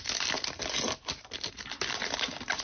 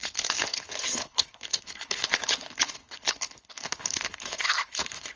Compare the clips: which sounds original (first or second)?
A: first